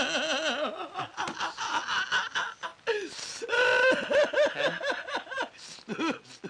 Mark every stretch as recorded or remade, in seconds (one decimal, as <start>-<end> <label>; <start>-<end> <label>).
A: 0.0-6.5 recorded